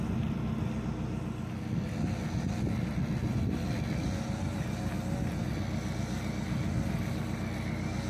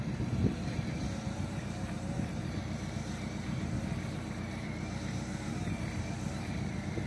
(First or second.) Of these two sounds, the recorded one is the first